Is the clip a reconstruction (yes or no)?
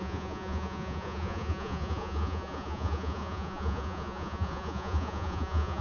yes